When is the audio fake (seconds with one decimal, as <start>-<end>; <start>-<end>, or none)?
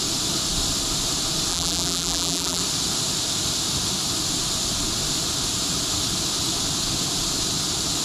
1.5-2.6